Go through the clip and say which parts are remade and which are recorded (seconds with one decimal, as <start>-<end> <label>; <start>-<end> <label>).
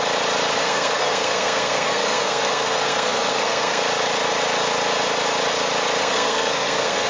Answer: 0.0-0.5 recorded; 0.5-3.8 remade; 3.8-6.0 recorded; 6.0-7.1 remade